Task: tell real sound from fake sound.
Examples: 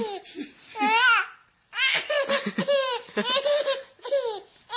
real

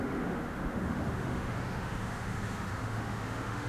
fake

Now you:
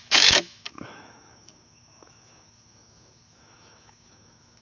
fake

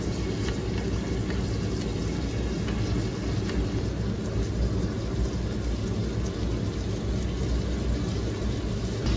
real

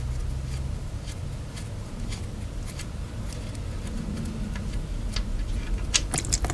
real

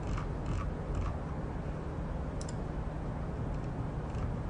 real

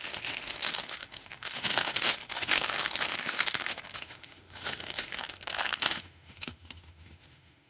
fake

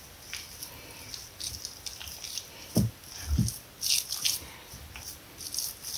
real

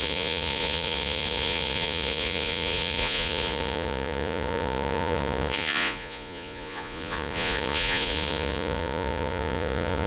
fake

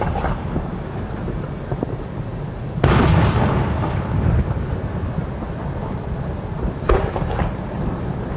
real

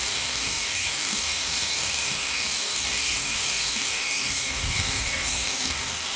fake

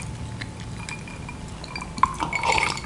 real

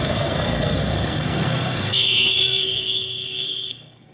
fake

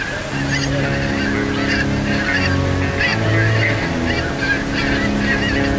real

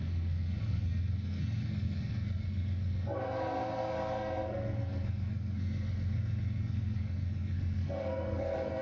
fake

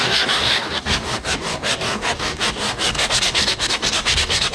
fake